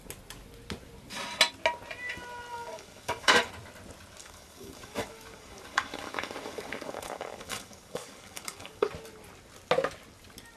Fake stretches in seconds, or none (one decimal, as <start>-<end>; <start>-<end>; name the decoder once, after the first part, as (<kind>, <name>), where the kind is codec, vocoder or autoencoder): 2.5-3.5 (codec, DAC); 4.2-8.9